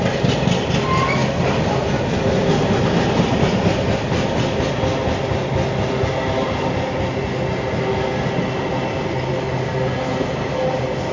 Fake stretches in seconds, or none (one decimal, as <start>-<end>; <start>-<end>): none